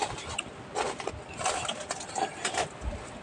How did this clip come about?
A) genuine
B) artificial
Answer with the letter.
A